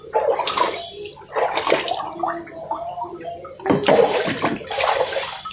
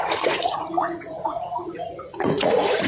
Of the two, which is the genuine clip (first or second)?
first